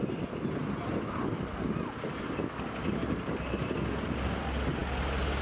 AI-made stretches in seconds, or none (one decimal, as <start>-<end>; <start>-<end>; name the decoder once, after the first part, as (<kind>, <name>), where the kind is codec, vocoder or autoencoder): none